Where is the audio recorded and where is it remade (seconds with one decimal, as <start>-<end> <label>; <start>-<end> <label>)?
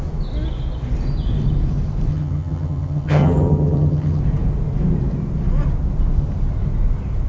0.0-2.1 recorded; 2.1-4.2 remade; 4.2-7.3 recorded